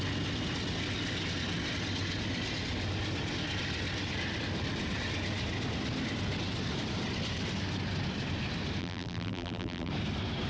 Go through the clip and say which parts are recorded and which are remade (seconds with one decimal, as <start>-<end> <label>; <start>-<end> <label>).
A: 0.0-8.8 recorded; 8.8-9.9 remade; 9.9-10.5 recorded